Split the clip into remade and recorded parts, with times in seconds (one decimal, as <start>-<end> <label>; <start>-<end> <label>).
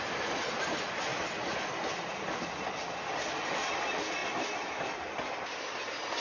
0.0-6.2 recorded